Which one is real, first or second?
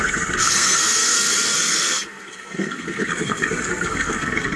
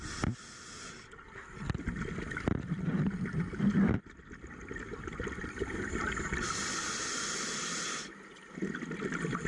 second